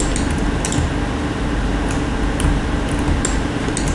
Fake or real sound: real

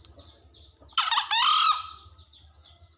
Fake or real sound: real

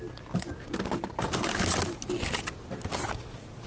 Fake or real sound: real